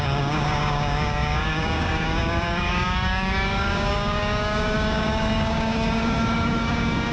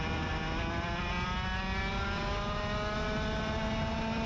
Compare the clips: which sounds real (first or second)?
second